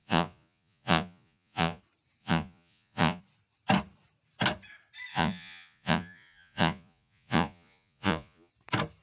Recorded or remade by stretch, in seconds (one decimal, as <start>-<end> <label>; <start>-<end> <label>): 0.0-1.8 remade; 1.8-2.2 recorded; 2.2-3.2 remade; 3.2-5.1 recorded; 5.1-8.5 remade; 8.5-9.0 recorded

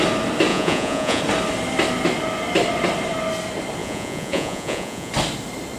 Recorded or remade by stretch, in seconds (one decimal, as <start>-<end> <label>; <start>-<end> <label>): 0.0-0.5 recorded; 0.5-1.2 remade; 1.2-3.8 recorded; 3.8-5.1 remade; 5.1-5.8 recorded

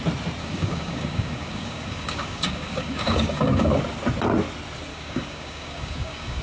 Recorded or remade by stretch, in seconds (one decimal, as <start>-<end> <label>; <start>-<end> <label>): 0.0-0.4 recorded; 0.4-3.8 remade; 3.8-4.9 recorded; 4.9-6.4 remade

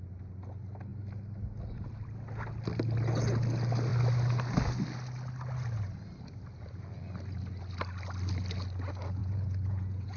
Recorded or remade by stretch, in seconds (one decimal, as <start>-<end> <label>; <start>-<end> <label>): 0.0-9.2 recorded; 9.2-10.2 remade

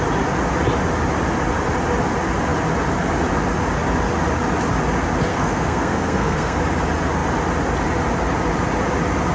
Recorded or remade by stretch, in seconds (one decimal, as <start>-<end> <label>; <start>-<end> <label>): 0.0-5.3 recorded; 5.3-6.6 remade; 6.6-9.3 recorded

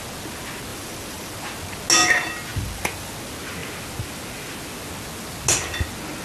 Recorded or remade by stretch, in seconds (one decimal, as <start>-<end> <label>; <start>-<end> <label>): 0.0-0.7 recorded; 0.7-1.3 remade; 1.3-2.5 recorded; 2.5-3.1 remade; 3.1-6.2 recorded

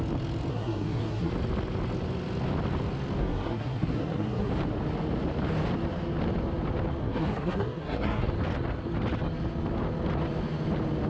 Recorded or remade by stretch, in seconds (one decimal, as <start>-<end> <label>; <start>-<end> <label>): 0.0-0.5 recorded; 0.5-1.3 remade; 1.3-3.2 recorded; 3.2-4.5 remade; 4.5-7.0 recorded; 7.0-8.3 remade; 8.3-11.1 recorded